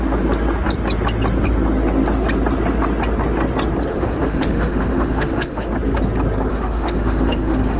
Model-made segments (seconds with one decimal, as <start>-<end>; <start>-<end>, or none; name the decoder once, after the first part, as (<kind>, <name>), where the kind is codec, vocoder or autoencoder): 3.9-5.7 (autoencoder, DAC-VAE); 6.5-7.8